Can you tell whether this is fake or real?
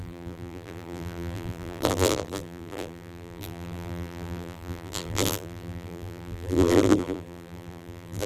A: fake